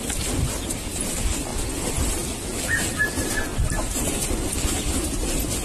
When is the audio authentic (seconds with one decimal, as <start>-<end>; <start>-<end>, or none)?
0.0-3.5; 4.2-5.6